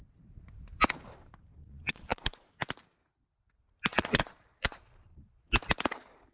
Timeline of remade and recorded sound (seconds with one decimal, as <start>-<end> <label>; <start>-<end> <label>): 0.0-1.6 recorded; 1.6-2.5 remade; 2.5-3.9 recorded; 3.9-5.4 remade; 5.4-6.3 recorded